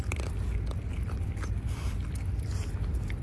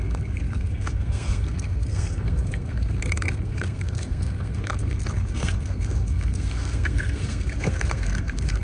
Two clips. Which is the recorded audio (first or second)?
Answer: first